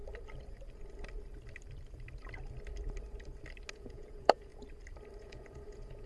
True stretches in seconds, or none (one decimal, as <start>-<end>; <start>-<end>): 0.0-3.7; 4.5-5.2